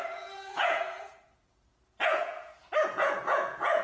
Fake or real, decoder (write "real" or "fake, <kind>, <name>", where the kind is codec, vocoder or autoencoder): fake, vocoder, Vocos